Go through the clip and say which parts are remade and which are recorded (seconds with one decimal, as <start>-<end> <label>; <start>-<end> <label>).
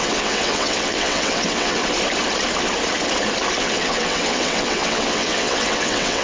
0.0-1.8 remade; 1.8-3.6 recorded; 3.6-6.2 remade